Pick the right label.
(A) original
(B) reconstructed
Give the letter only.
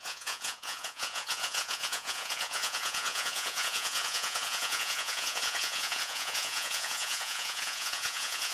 B